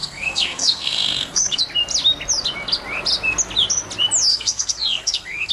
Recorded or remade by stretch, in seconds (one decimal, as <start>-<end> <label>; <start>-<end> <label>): 0.0-1.6 remade; 1.6-4.3 recorded; 4.3-5.5 remade